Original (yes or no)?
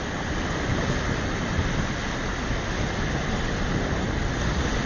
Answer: yes